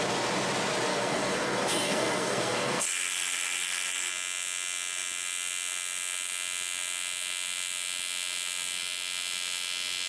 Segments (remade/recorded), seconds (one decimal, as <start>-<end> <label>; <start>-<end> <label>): 0.0-0.9 recorded; 0.9-4.1 remade; 4.1-10.1 recorded